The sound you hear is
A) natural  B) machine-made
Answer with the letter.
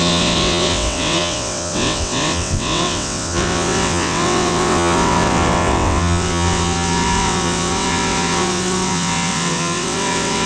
B